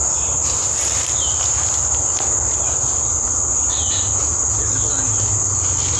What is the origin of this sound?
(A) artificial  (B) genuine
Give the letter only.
B